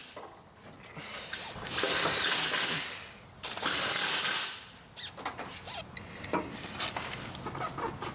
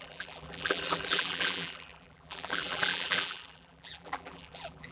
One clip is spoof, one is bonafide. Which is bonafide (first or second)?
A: first